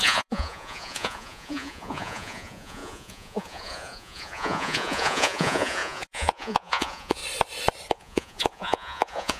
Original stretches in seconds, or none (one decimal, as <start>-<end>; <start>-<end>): 7.2-7.9